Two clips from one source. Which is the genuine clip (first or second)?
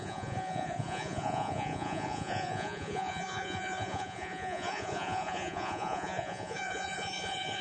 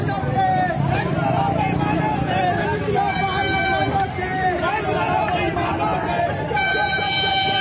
second